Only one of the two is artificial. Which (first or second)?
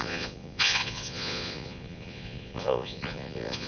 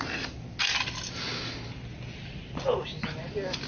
first